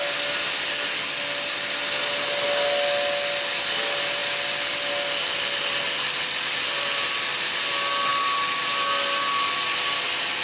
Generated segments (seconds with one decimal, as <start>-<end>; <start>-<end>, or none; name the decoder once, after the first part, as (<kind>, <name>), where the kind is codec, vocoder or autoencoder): none